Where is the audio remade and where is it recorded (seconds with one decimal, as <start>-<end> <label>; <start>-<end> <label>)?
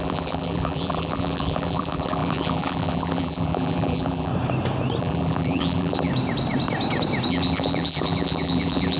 0.0-4.3 remade; 4.3-5.0 recorded; 5.0-6.1 remade; 6.1-7.3 recorded; 7.3-9.0 remade